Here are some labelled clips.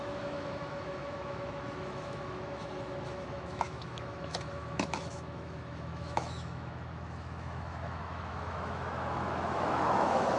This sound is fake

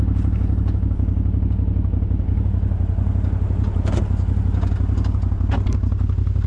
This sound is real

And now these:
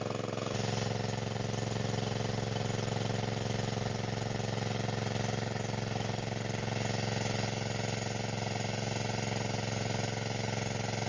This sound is real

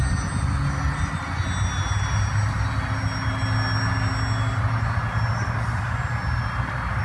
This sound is real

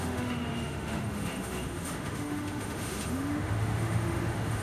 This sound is fake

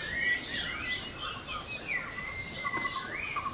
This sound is real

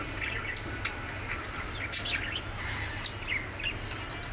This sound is real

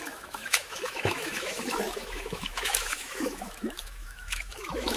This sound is fake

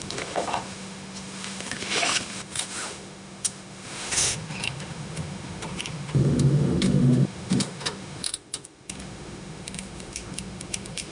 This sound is fake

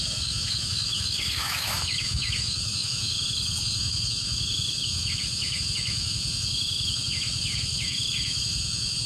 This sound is fake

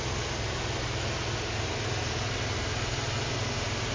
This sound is real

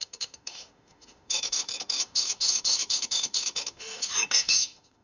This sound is fake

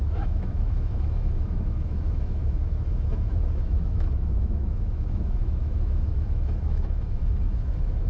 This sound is fake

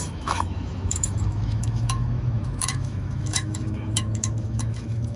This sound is fake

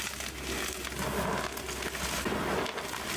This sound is real